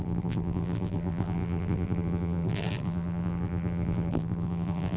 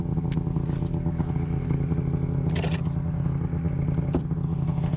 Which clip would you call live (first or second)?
second